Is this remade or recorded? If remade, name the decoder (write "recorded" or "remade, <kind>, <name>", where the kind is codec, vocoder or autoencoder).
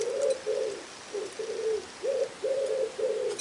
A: recorded